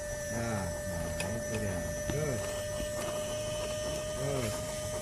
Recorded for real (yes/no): yes